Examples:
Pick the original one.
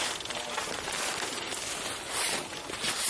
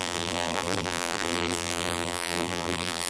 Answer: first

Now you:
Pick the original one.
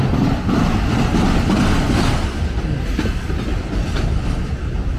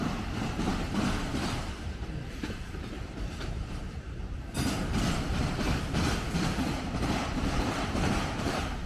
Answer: first